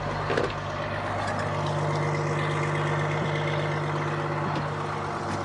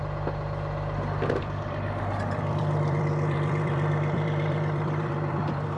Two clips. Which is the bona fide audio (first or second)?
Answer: first